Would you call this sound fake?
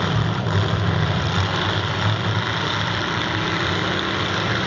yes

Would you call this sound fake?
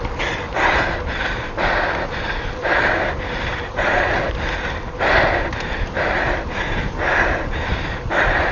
no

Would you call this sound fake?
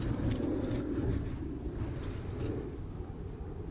no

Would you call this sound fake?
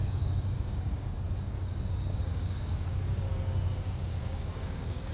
yes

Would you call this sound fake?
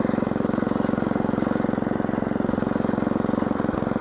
no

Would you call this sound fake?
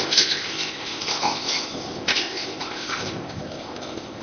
yes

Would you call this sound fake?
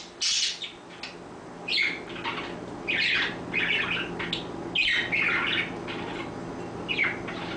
no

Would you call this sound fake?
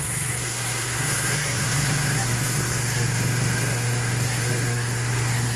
yes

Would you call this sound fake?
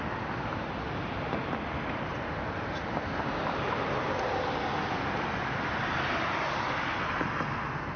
no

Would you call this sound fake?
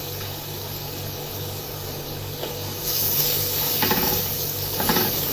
yes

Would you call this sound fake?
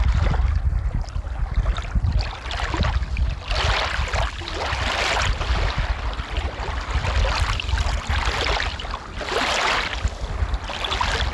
no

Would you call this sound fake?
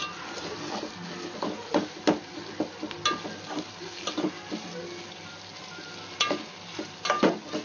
no